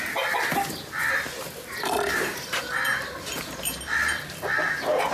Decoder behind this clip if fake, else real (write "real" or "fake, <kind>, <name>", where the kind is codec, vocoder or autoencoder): real